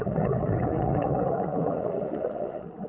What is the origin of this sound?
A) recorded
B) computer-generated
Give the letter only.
B